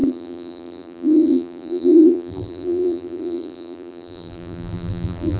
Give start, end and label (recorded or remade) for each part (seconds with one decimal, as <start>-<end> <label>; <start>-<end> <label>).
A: 0.0-5.4 remade

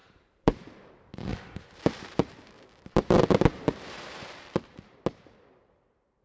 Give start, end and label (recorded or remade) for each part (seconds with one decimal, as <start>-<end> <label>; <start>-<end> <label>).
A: 0.0-0.9 remade; 0.9-1.3 recorded; 1.3-5.0 remade; 5.0-6.2 recorded

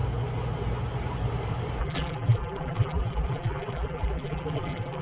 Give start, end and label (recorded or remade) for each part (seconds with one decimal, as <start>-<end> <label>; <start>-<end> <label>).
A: 0.0-1.8 recorded; 1.8-5.0 remade